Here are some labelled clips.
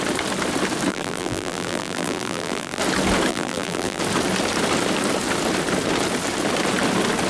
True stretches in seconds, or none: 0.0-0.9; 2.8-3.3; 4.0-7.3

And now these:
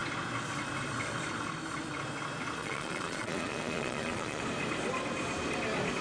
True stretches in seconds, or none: 0.0-2.6; 4.4-6.0